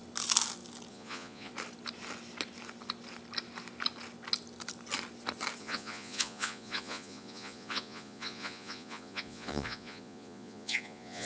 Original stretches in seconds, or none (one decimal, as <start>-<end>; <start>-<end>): 0.0-0.9; 1.5-5.6